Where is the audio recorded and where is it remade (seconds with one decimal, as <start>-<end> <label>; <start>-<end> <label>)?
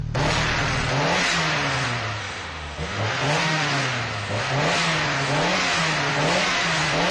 0.0-2.2 recorded; 2.2-4.0 remade; 4.0-7.1 recorded